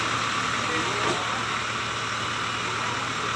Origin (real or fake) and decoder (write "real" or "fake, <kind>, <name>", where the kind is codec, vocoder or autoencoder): real